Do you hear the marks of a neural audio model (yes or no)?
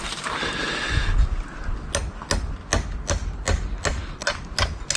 no